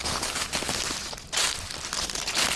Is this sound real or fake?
real